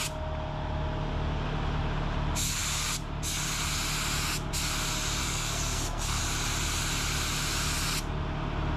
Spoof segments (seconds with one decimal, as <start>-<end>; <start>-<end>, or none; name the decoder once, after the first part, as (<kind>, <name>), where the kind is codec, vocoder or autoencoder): 5.2-6.2 (codec, SNAC)